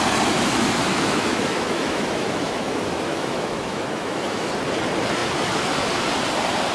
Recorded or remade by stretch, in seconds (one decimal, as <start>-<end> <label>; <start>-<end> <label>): 0.0-0.9 recorded; 0.9-4.5 remade; 4.5-6.7 recorded